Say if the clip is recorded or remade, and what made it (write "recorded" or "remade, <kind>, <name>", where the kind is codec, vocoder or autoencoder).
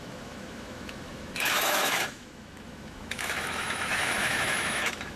remade, autoencoder, DAC-VAE